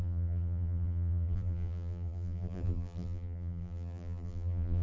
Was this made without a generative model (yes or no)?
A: no